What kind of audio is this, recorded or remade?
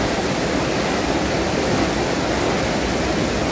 recorded